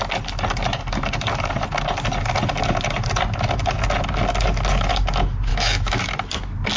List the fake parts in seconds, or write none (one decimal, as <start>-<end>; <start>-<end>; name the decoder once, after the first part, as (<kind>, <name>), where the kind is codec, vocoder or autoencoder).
5.5-6.1 (autoencoder, DAC-VAE)